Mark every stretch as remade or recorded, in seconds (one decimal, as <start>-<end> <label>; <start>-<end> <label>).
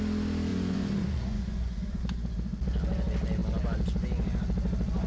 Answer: 0.0-0.5 recorded; 0.5-2.0 remade; 2.0-5.1 recorded